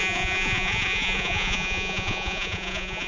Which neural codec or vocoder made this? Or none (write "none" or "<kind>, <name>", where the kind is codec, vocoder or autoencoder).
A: vocoder, Vocos